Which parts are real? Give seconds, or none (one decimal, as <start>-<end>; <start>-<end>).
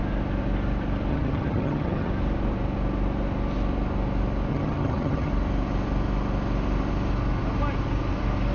0.0-1.1; 2.1-4.5; 5.3-8.5